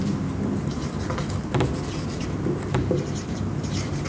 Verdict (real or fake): real